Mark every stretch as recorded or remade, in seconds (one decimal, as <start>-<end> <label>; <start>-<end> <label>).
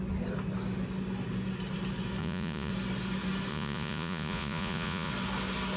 0.0-2.2 recorded; 2.2-2.7 remade; 2.7-3.5 recorded; 3.5-5.1 remade; 5.1-5.8 recorded